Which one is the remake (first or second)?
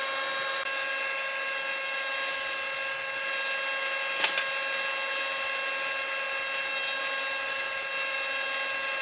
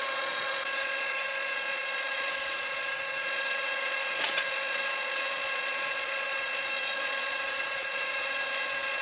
second